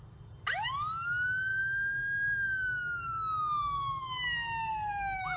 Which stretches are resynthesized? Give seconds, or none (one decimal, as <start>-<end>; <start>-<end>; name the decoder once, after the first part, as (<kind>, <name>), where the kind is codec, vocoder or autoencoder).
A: none